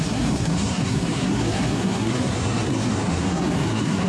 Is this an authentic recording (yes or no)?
no